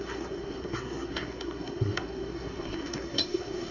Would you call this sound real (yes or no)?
no